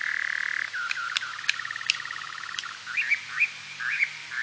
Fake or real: real